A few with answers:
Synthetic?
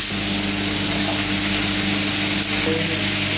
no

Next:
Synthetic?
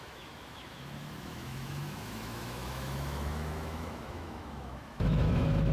yes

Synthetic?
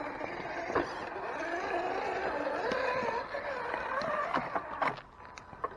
no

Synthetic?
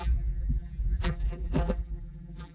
yes